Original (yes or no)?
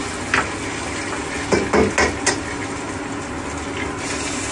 yes